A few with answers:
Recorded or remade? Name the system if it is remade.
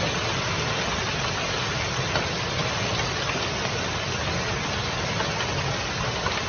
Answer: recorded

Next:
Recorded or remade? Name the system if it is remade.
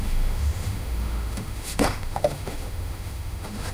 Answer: remade, autoencoder, DAC-VAE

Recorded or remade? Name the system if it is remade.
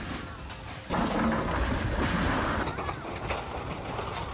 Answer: recorded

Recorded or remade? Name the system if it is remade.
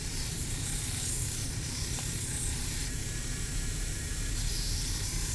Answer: remade, vocoder, BigVGAN v2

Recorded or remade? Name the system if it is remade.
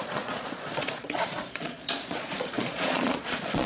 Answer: remade, vocoder, Vocos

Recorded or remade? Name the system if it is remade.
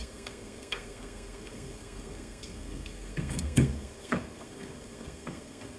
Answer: remade, codec, SNAC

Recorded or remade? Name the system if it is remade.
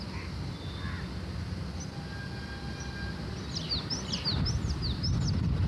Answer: recorded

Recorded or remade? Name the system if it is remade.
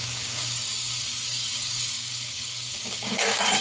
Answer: remade, codec, DAC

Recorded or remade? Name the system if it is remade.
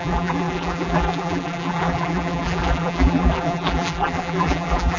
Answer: remade, vocoder, BigVGAN v2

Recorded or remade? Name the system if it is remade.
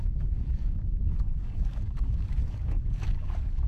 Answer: remade, codec, DAC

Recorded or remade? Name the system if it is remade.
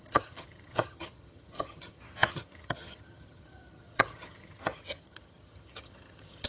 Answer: remade, vocoder, HiFi-GAN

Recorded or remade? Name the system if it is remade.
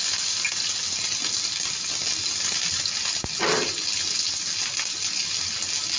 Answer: recorded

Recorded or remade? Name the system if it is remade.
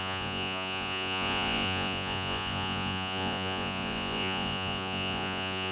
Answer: remade, vocoder, Vocos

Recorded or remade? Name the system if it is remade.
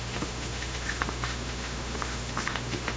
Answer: remade, autoencoder, DAC-VAE